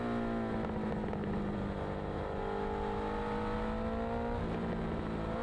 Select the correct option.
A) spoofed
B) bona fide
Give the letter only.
B